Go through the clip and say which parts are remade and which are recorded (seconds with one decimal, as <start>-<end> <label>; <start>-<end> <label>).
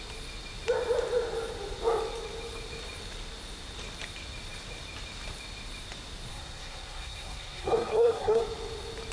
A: 0.0-6.3 recorded; 6.3-8.4 remade; 8.4-9.1 recorded